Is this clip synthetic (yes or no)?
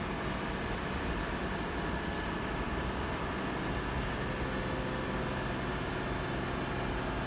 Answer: no